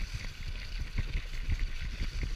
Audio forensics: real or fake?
real